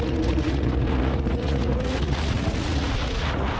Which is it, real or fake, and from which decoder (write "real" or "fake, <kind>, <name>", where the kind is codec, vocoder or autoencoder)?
fake, vocoder, Vocos